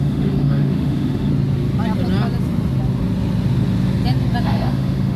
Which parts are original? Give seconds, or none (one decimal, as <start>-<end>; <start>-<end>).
1.3-4.4